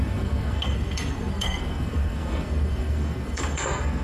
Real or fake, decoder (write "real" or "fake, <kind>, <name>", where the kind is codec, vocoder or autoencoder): fake, codec, SNAC